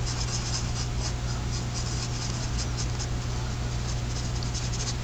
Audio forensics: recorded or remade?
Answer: recorded